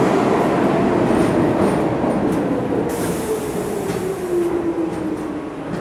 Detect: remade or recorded recorded